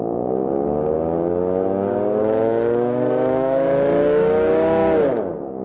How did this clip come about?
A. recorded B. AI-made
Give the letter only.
B